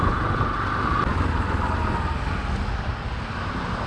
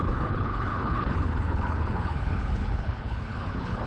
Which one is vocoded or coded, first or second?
second